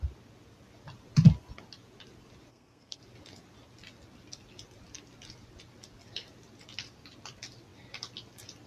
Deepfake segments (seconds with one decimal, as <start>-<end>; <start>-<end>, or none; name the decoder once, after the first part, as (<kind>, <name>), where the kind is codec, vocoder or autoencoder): 2.5-3.0 (codec, SNAC)